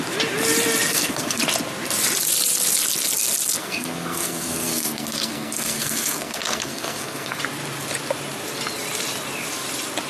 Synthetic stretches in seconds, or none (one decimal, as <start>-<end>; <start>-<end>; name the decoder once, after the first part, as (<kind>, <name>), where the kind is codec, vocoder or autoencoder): 0.9-1.4 (codec, SNAC); 3.6-7.4